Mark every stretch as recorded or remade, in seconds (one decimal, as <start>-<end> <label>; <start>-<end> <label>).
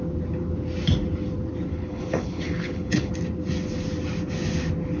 0.0-1.7 recorded; 1.7-3.1 remade; 3.1-5.0 recorded